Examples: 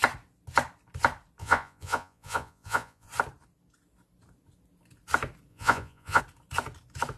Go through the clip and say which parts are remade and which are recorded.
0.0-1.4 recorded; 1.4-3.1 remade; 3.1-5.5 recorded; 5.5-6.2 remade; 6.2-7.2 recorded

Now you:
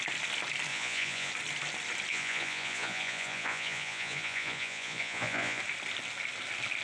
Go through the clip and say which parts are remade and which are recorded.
0.0-0.7 recorded; 0.7-1.3 remade; 1.3-2.1 recorded; 2.1-5.6 remade; 5.6-6.8 recorded

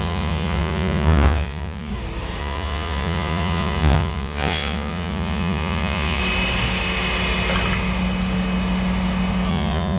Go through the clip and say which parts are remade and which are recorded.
0.0-1.9 remade; 1.9-2.4 recorded; 2.4-6.2 remade; 6.2-9.5 recorded; 9.5-10.0 remade

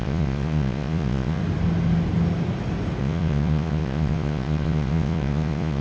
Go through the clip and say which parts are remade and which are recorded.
0.0-1.4 remade; 1.4-3.0 recorded; 3.0-5.8 remade

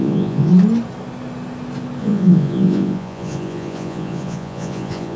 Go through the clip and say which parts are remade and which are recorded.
0.0-0.5 remade; 0.5-2.0 recorded; 2.0-5.2 remade